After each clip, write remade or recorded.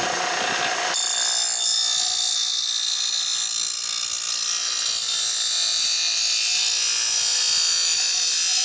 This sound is recorded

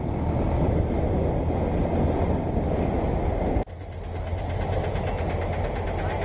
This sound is recorded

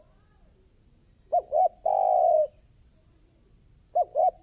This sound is recorded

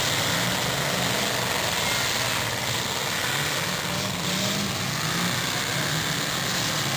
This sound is recorded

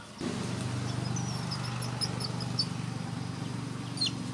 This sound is recorded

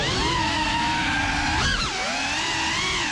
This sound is recorded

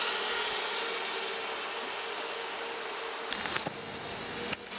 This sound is recorded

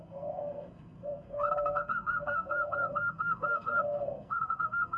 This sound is remade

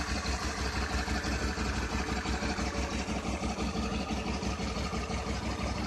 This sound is recorded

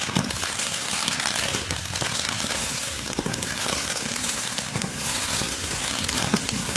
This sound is remade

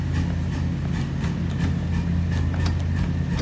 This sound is recorded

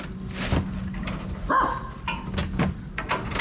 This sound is recorded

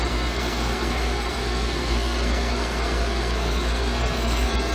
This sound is remade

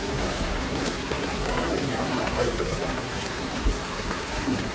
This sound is remade